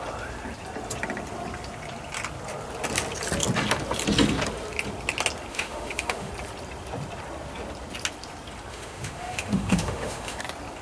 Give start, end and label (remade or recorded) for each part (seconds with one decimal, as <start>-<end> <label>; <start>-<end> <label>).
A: 0.0-5.5 recorded; 5.5-6.3 remade; 6.3-8.7 recorded; 8.7-10.4 remade; 10.4-10.8 recorded